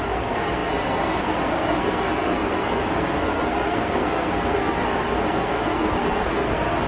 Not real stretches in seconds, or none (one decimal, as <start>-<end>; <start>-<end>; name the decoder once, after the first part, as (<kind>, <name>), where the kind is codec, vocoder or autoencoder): 0.0-6.9 (codec, SNAC)

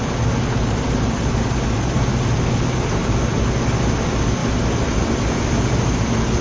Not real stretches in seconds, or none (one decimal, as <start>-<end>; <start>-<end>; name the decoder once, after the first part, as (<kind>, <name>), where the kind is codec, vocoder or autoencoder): 3.0-3.6 (vocoder, BigVGAN v2)

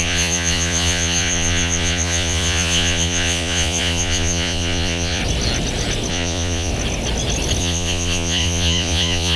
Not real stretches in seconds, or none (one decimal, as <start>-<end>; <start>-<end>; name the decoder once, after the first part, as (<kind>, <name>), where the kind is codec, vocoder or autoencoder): 0.0-5.2 (vocoder, Vocos); 6.1-6.7; 7.6-9.4

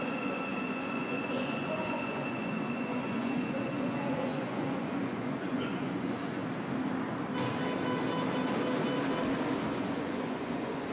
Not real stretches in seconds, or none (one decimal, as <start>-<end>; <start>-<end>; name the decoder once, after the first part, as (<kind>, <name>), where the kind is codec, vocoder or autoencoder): 0.0-6.4 (vocoder, Vocos); 9.7-10.9